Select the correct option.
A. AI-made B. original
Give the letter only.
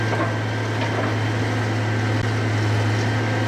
B